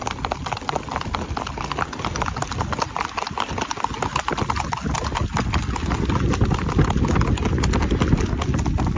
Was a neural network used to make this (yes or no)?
no